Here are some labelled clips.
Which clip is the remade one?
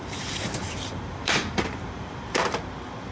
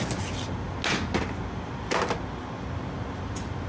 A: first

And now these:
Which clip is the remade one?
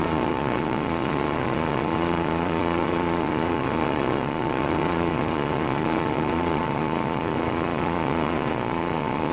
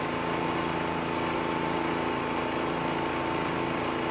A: first